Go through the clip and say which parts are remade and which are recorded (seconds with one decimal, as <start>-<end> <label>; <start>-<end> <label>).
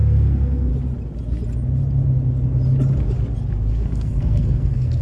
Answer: 0.0-0.7 remade; 0.7-3.7 recorded; 3.7-5.0 remade